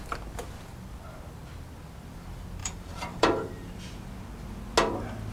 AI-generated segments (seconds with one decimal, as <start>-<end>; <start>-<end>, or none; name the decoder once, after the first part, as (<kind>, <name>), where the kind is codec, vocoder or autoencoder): 2.6-3.7 (vocoder, BigVGAN v2)